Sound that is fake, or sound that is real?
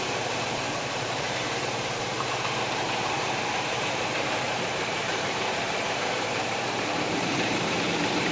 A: fake